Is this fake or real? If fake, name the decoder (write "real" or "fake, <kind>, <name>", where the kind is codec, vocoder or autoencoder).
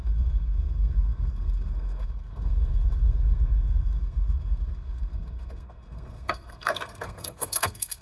fake, codec, SNAC